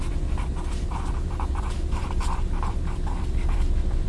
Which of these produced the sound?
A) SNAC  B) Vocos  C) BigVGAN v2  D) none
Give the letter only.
C